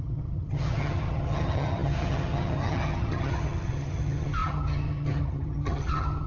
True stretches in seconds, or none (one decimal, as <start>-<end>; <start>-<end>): none